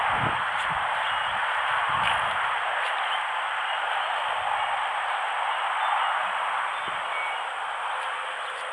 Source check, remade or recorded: recorded